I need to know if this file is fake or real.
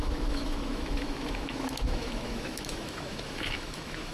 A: fake